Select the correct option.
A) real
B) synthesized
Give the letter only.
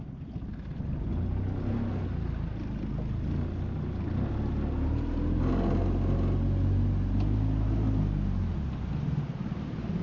A